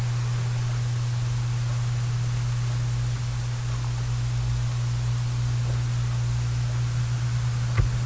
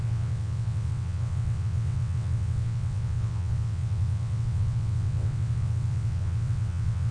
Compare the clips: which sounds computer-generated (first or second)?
second